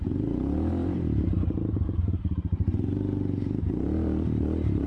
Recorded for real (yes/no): no